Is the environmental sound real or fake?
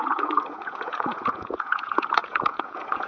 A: fake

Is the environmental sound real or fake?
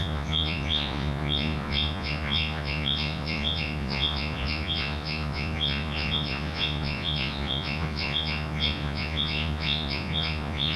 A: fake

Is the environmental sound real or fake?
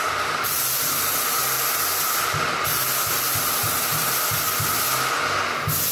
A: real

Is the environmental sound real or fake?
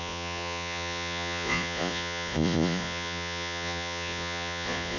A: fake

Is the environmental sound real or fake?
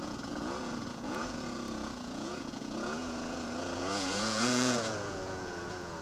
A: fake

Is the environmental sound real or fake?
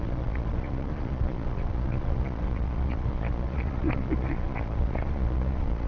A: fake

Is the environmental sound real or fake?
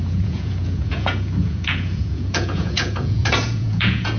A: fake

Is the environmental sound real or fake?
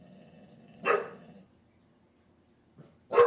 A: real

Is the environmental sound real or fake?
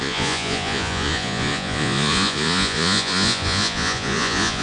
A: fake